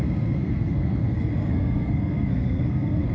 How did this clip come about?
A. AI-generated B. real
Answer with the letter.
A